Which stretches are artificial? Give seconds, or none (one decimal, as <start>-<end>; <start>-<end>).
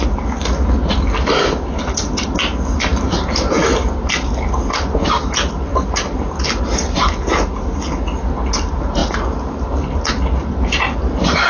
none